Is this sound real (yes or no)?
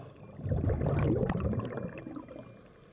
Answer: yes